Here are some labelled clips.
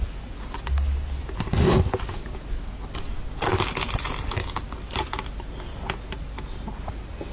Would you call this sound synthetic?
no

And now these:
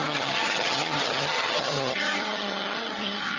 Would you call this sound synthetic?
yes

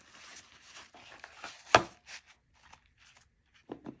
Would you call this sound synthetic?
no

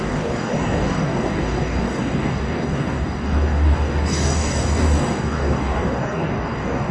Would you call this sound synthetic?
yes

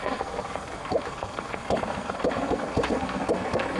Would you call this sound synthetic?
yes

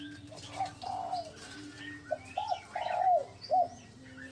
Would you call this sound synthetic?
no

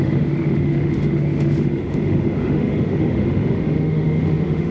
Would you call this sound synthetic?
yes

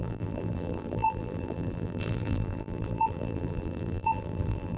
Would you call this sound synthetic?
yes